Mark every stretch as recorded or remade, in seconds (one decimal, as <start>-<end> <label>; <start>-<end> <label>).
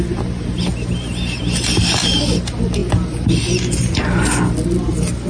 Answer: 0.0-5.3 recorded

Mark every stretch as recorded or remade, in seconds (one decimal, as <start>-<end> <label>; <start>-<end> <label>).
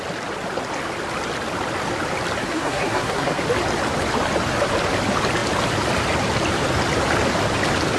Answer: 0.0-2.4 recorded; 2.4-3.4 remade; 3.4-8.0 recorded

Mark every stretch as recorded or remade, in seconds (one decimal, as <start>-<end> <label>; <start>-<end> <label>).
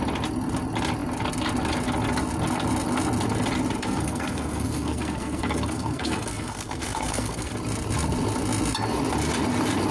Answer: 0.0-3.8 recorded; 3.8-7.5 remade; 7.5-9.9 recorded